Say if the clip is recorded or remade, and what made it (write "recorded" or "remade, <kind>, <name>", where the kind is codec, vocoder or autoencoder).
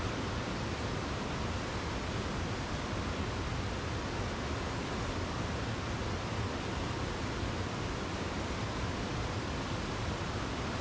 recorded